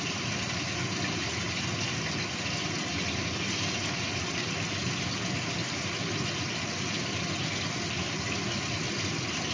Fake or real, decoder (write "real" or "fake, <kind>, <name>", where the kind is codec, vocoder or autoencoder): real